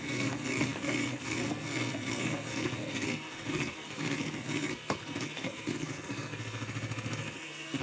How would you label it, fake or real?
fake